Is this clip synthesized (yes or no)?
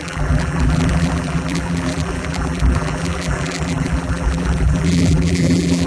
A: yes